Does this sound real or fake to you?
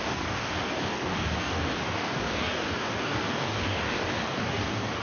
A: fake